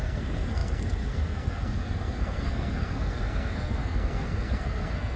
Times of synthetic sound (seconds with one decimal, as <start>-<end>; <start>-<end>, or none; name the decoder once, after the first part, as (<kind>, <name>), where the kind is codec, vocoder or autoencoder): 0.0-5.2 (codec, SNAC)